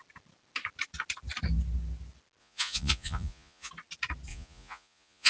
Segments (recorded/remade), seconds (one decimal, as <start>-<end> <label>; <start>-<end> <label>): 0.0-2.4 recorded; 2.4-3.7 remade; 3.7-4.3 recorded; 4.3-5.3 remade